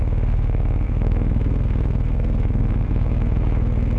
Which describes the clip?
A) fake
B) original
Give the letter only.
A